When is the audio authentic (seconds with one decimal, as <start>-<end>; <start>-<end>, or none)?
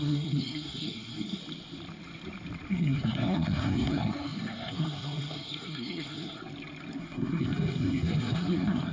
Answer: 1.4-2.7; 6.4-7.0